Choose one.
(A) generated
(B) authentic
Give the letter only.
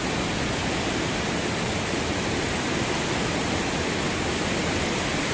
B